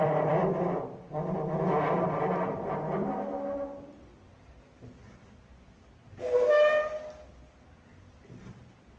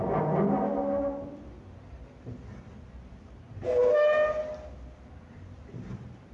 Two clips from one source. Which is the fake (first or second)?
first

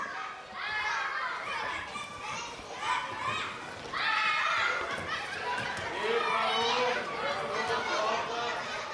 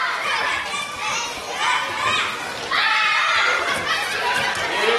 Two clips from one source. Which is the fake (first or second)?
second